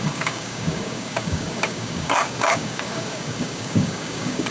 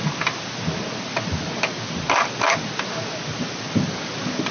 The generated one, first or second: first